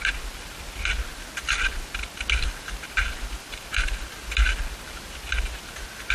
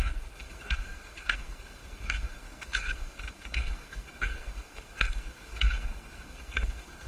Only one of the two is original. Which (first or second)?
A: first